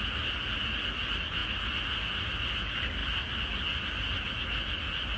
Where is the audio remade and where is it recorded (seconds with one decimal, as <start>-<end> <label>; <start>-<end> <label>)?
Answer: 0.0-5.2 recorded